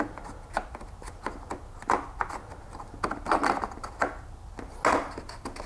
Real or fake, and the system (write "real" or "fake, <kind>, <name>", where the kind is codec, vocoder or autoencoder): real